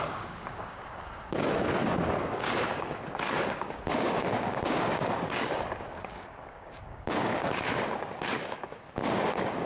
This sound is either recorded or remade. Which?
remade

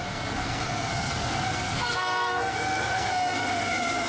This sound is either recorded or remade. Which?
remade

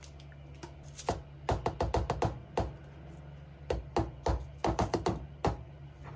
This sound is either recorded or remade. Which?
recorded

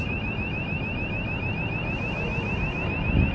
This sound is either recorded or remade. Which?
recorded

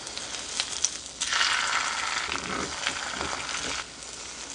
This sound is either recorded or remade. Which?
recorded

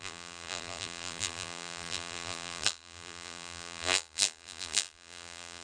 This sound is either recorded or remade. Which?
remade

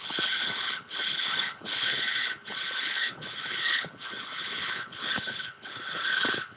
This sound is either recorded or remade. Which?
remade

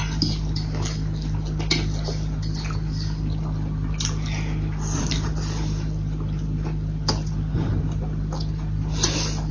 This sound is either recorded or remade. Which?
recorded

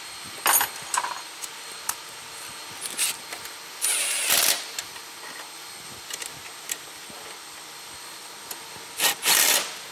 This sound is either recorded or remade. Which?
recorded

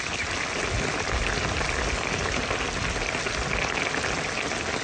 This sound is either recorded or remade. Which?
recorded